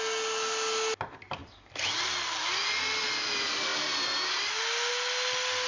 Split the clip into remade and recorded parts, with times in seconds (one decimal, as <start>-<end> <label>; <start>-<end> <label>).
0.0-5.7 recorded